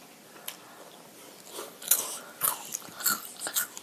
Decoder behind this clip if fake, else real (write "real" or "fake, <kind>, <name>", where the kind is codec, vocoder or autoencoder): real